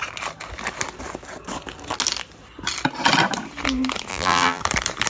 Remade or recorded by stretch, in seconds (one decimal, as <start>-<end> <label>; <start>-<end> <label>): 0.0-4.1 recorded; 4.1-4.6 remade; 4.6-5.1 recorded